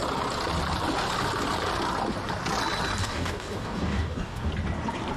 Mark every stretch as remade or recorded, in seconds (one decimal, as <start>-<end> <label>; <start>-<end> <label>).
0.0-3.0 recorded; 3.0-4.5 remade; 4.5-5.2 recorded